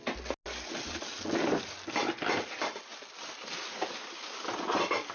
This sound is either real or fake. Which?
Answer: real